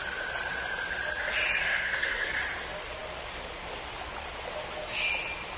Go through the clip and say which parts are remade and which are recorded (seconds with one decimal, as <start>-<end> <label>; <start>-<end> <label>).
0.0-1.6 recorded; 1.6-2.3 remade; 2.3-5.6 recorded